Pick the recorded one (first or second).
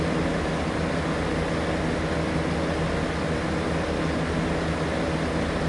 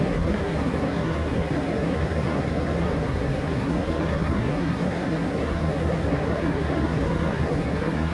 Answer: first